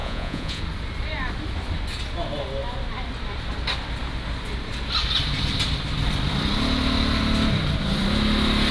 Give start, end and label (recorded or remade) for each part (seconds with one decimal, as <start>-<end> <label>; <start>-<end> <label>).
0.0-0.6 remade; 0.6-8.7 recorded